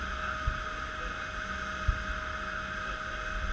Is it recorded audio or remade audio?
recorded